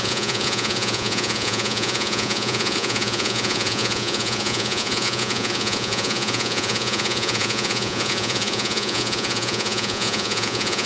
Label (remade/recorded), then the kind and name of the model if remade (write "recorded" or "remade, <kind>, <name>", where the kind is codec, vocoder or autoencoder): remade, vocoder, Vocos